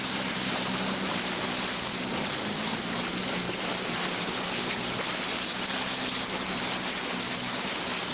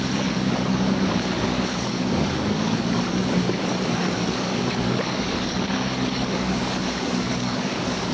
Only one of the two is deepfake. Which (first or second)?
second